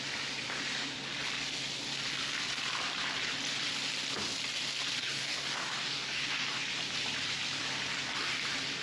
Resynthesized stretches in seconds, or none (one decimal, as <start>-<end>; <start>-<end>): 5.0-6.6